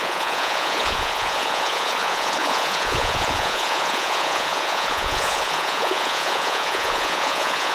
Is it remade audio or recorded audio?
remade